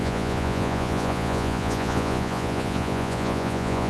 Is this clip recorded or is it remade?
remade